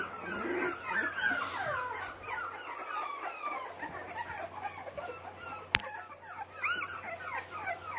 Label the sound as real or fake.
real